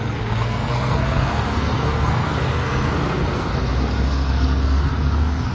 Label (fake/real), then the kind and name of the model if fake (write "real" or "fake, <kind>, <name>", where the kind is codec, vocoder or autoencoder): fake, codec, SNAC